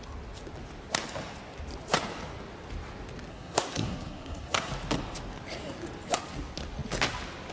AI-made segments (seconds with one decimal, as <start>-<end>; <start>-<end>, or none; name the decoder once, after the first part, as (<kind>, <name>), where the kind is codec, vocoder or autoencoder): 3.3-4.7 (codec, SNAC)